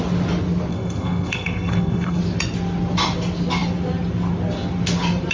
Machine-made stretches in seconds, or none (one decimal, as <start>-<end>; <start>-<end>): 0.7-2.2